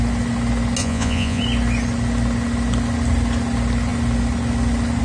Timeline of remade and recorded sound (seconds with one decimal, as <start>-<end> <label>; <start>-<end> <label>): 0.0-0.8 recorded; 0.8-1.4 remade; 1.4-5.0 recorded